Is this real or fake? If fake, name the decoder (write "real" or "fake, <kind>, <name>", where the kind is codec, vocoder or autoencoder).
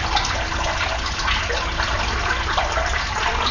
real